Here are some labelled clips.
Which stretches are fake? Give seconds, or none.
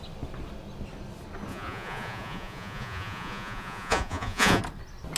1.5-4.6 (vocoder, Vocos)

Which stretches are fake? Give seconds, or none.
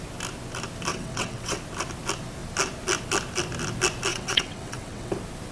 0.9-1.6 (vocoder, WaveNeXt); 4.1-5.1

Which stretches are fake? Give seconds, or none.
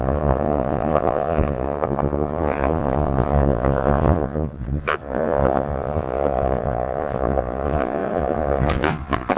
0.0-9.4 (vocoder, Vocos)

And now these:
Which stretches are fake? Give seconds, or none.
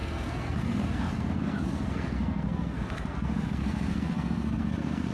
0.0-5.1 (codec, SNAC)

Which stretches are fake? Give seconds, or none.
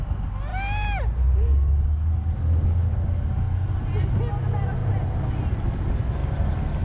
none